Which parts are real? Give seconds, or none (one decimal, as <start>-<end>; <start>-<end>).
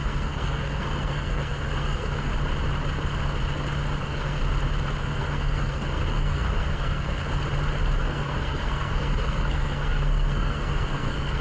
2.3-4.0; 4.4-5.0; 7.2-8.0